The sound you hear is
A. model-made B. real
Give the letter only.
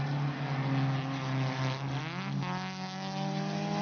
B